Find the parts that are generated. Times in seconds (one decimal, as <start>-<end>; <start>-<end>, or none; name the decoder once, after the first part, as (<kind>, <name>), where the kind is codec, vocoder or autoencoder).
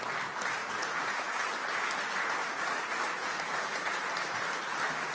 0.6-1.5 (vocoder, Vocos); 2.4-4.0